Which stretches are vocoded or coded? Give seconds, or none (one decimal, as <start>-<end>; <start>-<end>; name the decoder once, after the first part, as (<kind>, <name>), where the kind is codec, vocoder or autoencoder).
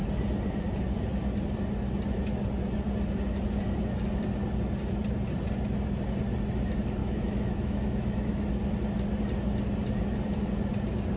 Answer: 7.0-8.5 (autoencoder, DAC-VAE)